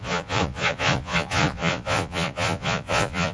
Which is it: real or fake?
fake